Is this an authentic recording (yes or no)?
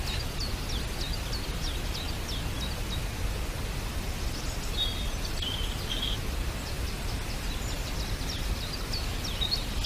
yes